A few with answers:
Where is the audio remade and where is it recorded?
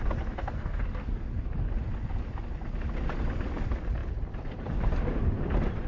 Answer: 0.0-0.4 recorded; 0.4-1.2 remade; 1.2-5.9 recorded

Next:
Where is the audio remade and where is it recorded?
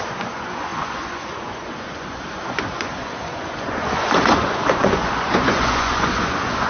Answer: 0.0-6.7 remade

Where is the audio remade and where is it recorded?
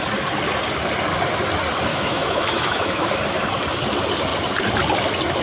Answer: 0.0-1.9 recorded; 1.9-3.2 remade; 3.2-5.4 recorded